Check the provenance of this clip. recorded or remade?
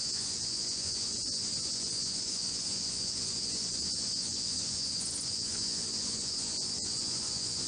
remade